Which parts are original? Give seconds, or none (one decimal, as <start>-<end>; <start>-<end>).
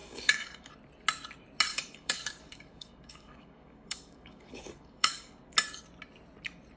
0.7-1.7; 5.5-6.8